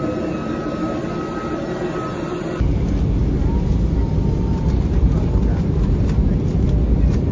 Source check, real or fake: real